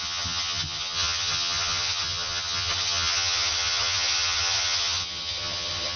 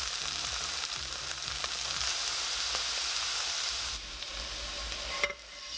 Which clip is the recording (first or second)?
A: second